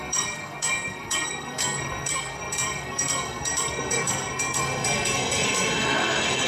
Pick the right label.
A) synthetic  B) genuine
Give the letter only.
A